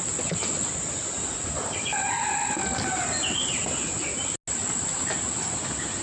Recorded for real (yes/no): yes